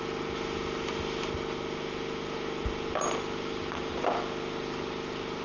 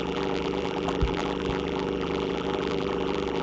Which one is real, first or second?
first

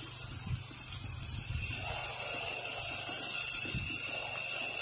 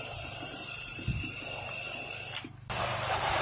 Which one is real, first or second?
first